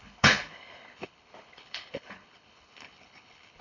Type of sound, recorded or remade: remade